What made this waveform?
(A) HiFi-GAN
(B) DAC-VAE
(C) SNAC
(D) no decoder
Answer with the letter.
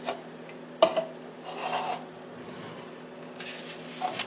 D